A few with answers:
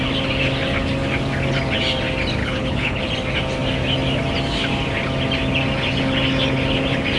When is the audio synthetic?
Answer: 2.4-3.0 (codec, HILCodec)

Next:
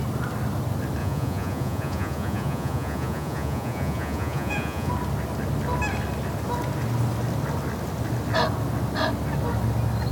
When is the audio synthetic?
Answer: 1.0-4.9 (vocoder, Vocos)

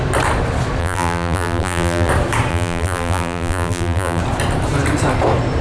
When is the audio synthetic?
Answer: 0.8-2.1 (vocoder, BigVGAN v2); 2.5-4.2

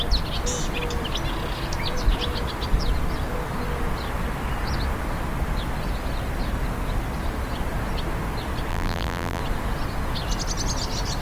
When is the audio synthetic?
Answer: 8.7-9.4 (vocoder, BigVGAN v2)

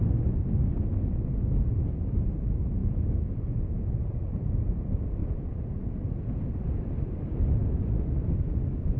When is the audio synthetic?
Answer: 2.8-4.8 (vocoder, Vocos); 5.2-6.9